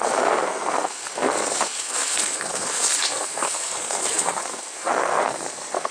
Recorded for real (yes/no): no